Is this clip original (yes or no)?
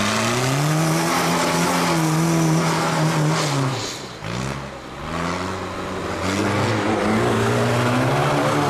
yes